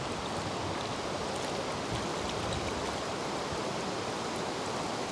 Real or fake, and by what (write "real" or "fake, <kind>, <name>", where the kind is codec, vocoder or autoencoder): real